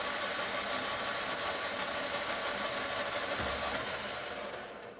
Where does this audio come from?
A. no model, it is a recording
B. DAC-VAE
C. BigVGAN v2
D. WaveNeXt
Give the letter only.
C